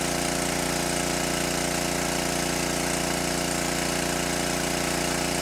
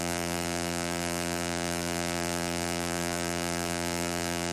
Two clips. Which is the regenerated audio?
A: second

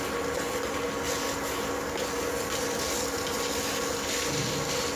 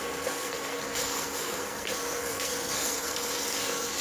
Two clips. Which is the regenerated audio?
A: second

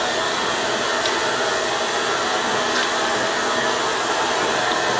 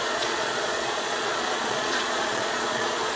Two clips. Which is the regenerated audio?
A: second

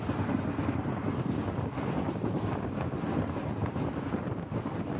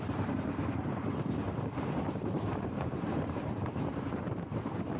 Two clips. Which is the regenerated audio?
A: second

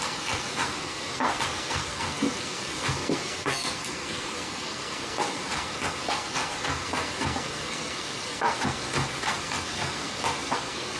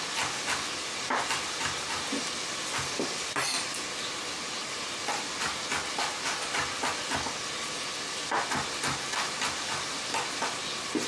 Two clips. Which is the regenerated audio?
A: first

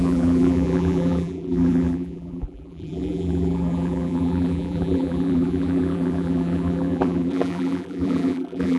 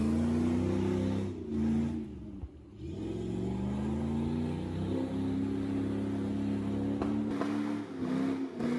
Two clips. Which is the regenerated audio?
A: first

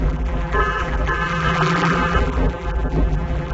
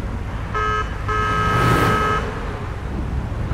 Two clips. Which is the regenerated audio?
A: first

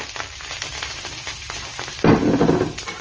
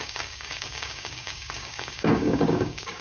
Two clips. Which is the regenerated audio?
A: second